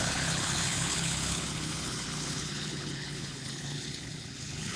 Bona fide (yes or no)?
no